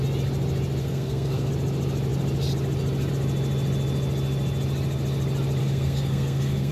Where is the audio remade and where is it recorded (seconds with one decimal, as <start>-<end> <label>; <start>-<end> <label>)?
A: 0.0-0.8 recorded; 0.8-1.5 remade; 1.5-5.6 recorded; 5.6-6.7 remade